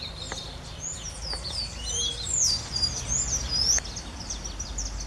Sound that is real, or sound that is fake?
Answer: real